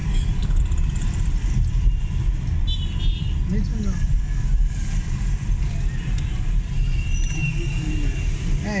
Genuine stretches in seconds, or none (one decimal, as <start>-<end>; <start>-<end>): 0.6-3.7; 4.9-7.4; 7.9-8.8